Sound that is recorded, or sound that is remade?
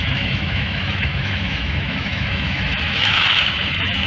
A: remade